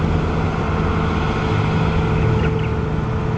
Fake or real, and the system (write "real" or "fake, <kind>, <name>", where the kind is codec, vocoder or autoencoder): real